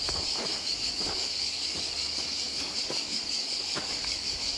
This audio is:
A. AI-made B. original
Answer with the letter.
A